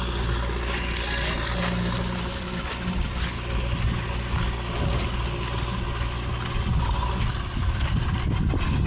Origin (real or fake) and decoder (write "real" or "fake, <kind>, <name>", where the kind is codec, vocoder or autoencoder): real